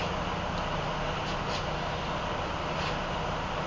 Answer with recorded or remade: recorded